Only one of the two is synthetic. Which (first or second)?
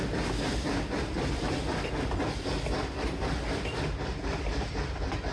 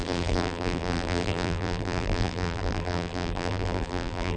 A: second